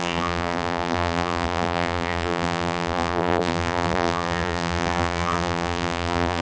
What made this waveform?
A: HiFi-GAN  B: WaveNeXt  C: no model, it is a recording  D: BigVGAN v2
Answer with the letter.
D